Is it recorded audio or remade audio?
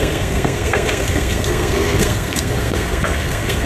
remade